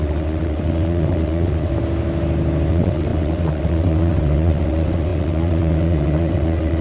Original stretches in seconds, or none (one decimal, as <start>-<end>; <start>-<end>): 1.7-2.7